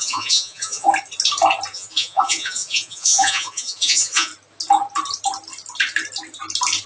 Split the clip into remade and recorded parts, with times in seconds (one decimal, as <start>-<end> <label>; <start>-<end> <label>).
0.0-0.9 remade; 0.9-1.7 recorded; 1.7-4.3 remade; 4.3-6.9 recorded